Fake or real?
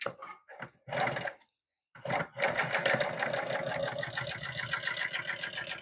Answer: real